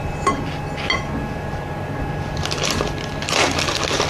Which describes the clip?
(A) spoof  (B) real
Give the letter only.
B